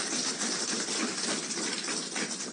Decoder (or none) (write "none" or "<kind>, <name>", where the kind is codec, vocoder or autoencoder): none